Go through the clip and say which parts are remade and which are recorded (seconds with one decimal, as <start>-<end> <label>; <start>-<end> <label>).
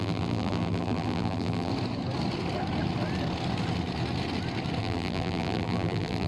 0.0-1.7 remade; 1.7-4.8 recorded; 4.8-6.3 remade